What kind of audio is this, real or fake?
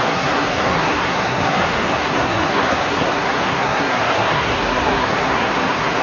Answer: fake